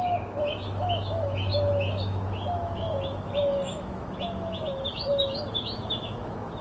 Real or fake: fake